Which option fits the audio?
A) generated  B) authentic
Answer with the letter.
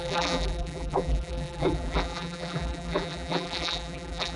A